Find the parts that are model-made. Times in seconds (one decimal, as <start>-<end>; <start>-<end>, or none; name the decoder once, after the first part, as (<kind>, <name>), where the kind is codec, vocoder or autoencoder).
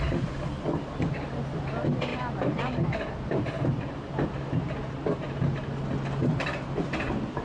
2.1-5.8 (vocoder, BigVGAN v2); 6.2-7.4